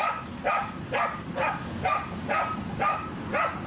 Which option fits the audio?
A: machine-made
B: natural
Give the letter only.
B